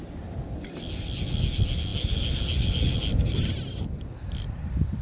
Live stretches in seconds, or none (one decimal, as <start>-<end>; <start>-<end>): 0.0-5.0